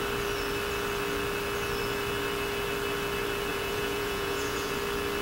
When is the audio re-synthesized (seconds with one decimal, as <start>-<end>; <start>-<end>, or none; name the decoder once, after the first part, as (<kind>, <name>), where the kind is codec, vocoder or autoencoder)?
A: 3.5-4.7 (vocoder, Vocos)